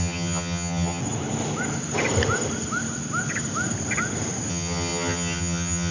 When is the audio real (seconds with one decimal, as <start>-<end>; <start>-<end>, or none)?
1.0-4.5